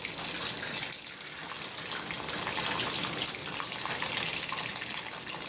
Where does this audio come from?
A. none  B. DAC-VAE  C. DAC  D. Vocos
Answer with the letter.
A